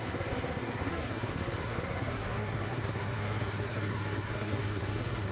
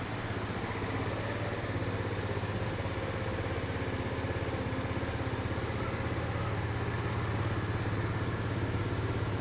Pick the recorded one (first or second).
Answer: second